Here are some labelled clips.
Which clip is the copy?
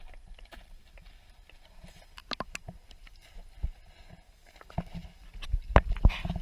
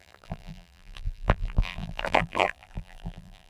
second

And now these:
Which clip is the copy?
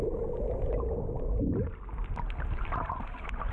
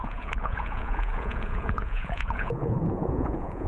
second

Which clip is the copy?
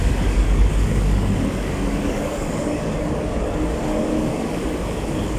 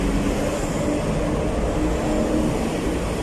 first